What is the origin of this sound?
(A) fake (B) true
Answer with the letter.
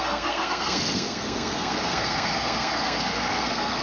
A